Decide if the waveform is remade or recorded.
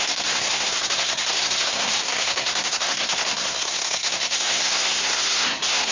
remade